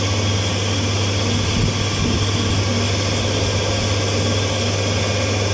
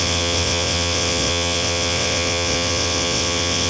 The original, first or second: first